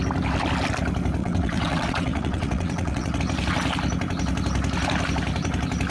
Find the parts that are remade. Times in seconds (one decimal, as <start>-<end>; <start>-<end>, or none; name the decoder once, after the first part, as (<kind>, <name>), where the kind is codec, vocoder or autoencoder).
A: 1.2-3.2 (vocoder, WaveNeXt)